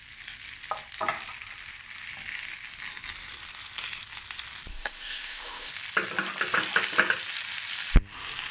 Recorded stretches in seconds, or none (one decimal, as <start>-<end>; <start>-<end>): 0.0-4.7; 5.7-8.5